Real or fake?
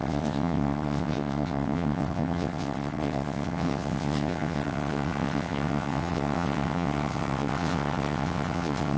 fake